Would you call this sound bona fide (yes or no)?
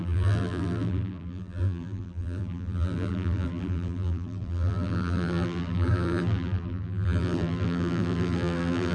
no